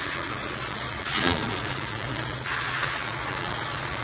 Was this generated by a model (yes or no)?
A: yes